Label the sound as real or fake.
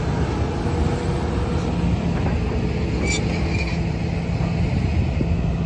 real